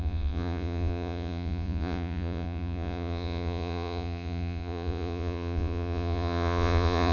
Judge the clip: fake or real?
fake